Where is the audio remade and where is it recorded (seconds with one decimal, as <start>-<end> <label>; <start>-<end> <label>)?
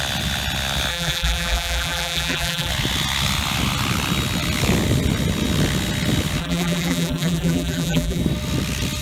0.0-0.9 recorded; 0.9-2.7 remade; 2.7-6.4 recorded; 6.4-8.2 remade; 8.2-9.0 recorded